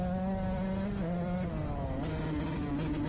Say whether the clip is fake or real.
real